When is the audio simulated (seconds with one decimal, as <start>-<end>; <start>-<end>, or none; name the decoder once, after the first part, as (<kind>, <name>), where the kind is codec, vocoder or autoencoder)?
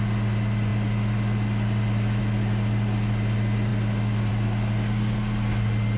none